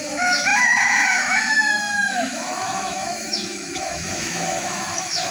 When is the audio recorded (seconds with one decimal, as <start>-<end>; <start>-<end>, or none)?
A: none